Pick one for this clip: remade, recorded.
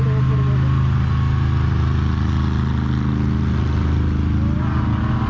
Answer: recorded